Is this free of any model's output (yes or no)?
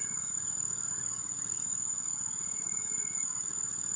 no